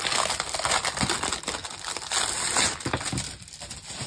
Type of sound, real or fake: real